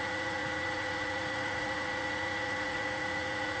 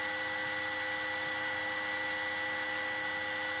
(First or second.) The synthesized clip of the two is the first